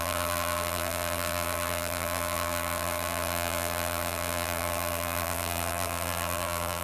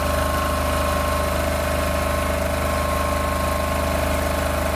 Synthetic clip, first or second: first